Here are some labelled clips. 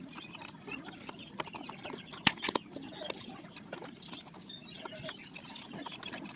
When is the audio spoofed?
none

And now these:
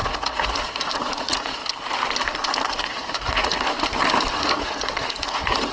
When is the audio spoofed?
0.0-1.6 (vocoder, Vocos); 2.7-3.5; 4.3-5.7

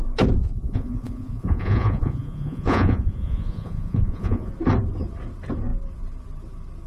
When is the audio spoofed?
0.4-4.5 (vocoder, Vocos)

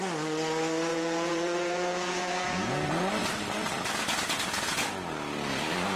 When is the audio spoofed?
0.9-2.7 (vocoder, Vocos)

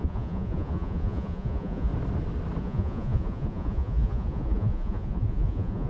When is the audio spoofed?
0.0-1.9 (vocoder, Vocos); 2.6-5.9

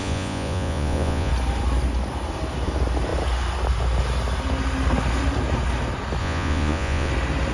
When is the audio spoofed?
0.0-1.3 (vocoder, Vocos); 6.2-7.1

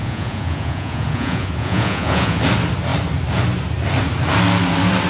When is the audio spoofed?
0.0-2.4 (vocoder, Vocos)